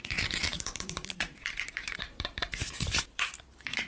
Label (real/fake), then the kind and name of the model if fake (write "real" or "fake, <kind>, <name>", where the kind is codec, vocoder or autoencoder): fake, vocoder, BigVGAN v2